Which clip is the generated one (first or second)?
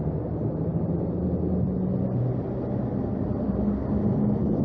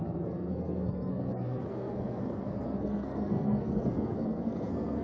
second